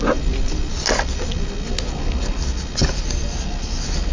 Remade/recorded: recorded